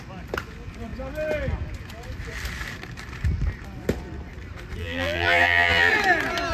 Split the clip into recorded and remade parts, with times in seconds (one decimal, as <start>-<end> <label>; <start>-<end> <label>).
0.0-4.8 recorded; 4.8-5.9 remade; 5.9-6.5 recorded

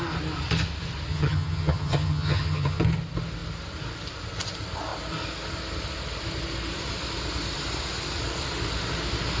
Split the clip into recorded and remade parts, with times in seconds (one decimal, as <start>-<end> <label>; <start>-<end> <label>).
0.0-1.1 recorded; 1.1-2.8 remade; 2.8-9.4 recorded

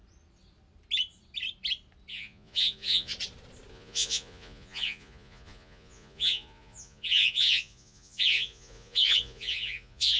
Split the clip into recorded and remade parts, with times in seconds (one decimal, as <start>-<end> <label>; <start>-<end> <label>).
0.0-2.1 recorded; 2.1-3.1 remade; 3.1-3.7 recorded; 3.7-10.2 remade

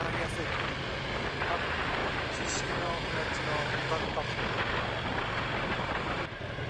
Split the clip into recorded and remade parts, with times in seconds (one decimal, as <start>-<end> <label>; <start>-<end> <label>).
0.0-1.5 recorded; 1.5-3.8 remade; 3.8-5.7 recorded; 5.7-6.7 remade